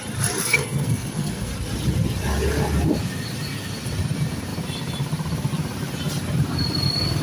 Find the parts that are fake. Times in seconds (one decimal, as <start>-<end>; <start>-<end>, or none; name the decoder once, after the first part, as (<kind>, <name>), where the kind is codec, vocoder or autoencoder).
0.4-1.5 (codec, SNAC)